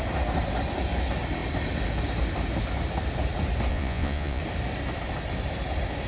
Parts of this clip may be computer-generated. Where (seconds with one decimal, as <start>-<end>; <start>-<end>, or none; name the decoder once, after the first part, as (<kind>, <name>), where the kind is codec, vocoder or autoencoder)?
3.7-4.4 (vocoder, Vocos)